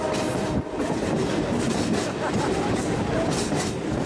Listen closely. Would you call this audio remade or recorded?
recorded